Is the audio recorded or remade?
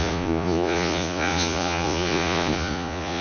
remade